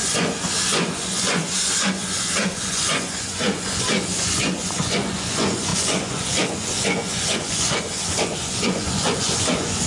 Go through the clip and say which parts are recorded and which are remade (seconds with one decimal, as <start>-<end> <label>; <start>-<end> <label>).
0.0-9.9 remade